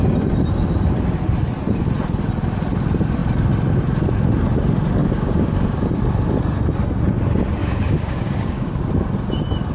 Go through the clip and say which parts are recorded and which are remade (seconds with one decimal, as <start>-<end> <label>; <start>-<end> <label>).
0.0-5.0 recorded; 5.0-6.0 remade; 6.0-7.6 recorded; 7.6-8.9 remade; 8.9-9.7 recorded

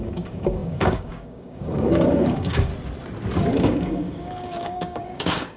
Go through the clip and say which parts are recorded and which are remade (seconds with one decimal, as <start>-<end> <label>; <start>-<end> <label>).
0.0-2.7 remade; 2.7-3.5 recorded; 3.5-5.6 remade

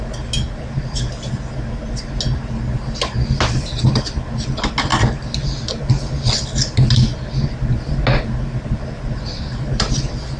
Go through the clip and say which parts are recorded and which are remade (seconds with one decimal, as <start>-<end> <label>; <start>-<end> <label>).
0.0-10.4 recorded

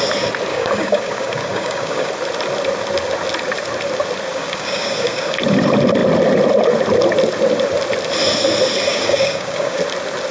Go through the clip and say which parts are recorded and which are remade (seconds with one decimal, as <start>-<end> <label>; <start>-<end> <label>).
0.0-0.5 recorded; 0.5-2.1 remade; 2.1-4.3 recorded; 4.3-5.4 remade; 5.4-8.9 recorded; 8.9-9.8 remade; 9.8-10.3 recorded

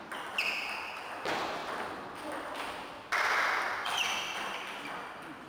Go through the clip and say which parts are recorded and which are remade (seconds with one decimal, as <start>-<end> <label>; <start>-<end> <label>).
0.0-5.5 recorded